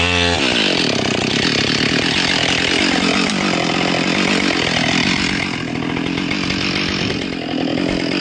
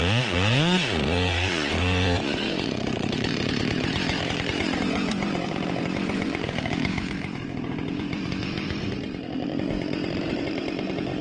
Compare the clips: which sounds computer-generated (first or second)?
second